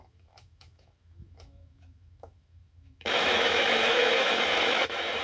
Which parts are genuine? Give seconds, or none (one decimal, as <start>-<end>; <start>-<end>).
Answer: none